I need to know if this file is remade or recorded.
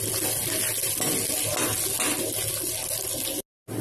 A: recorded